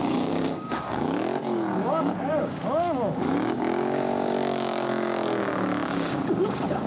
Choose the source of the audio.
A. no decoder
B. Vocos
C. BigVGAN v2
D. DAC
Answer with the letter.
D